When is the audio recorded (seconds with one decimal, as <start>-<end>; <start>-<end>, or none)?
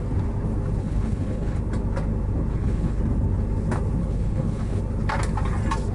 0.0-0.8; 1.6-2.5; 3.0-4.0; 4.8-5.9